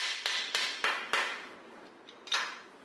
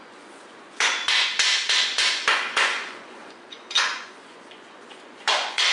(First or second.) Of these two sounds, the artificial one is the second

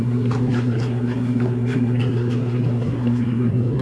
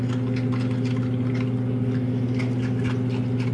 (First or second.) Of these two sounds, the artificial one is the first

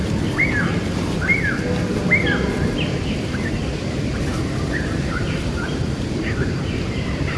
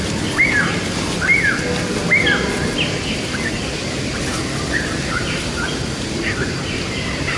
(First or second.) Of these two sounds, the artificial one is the first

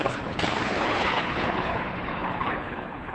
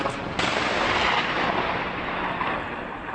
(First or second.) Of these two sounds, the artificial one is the first